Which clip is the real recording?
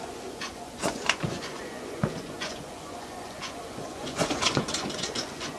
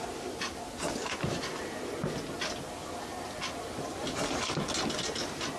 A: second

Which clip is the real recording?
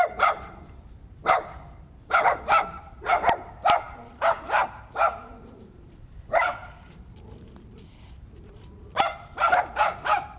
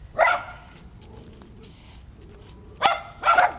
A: second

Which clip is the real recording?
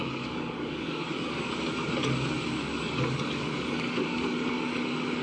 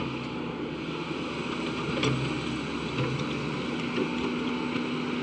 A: second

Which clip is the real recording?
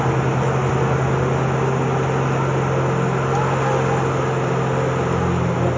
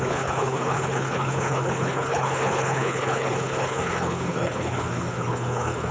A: first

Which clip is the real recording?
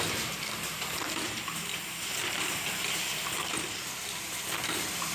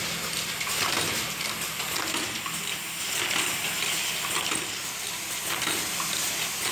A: second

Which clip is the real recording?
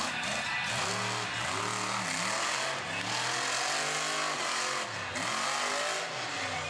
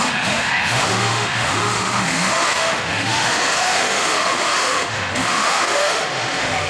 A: first